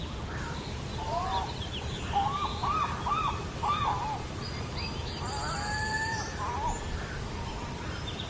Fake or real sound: fake